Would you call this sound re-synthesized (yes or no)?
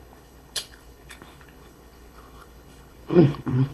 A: yes